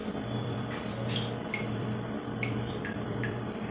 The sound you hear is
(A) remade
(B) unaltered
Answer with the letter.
A